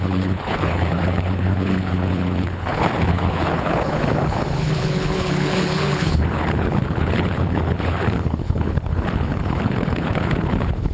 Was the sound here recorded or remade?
remade